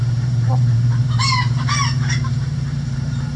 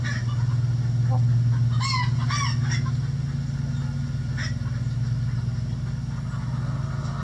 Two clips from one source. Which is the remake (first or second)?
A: first